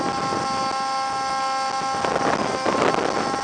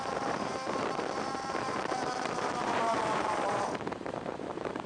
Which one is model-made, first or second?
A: second